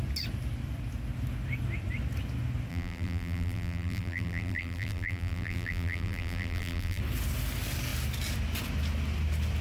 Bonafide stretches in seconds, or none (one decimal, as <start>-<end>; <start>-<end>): 0.0-2.7; 7.0-9.6